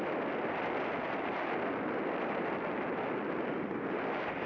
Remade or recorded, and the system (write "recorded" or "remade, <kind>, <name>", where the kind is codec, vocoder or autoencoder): recorded